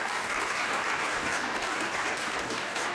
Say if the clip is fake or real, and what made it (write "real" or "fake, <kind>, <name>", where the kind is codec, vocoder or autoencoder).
fake, codec, DAC